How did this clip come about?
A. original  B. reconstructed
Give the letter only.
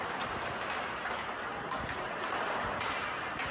A